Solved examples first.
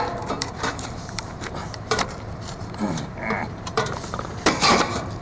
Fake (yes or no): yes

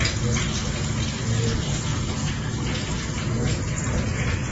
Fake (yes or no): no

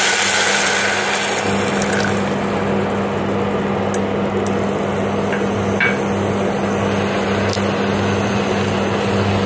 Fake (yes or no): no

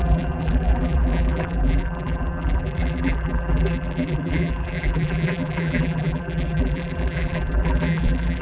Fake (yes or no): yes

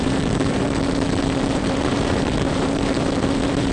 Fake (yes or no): yes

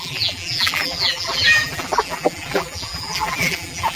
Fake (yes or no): yes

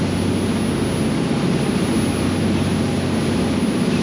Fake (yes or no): no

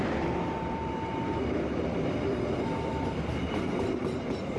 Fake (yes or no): yes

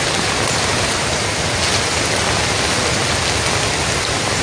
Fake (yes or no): no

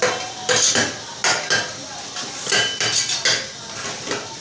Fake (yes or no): no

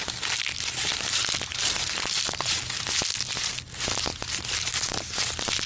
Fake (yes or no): no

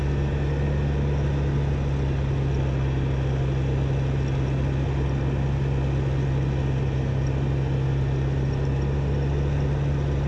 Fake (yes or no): no